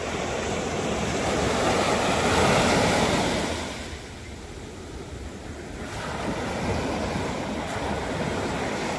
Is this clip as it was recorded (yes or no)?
yes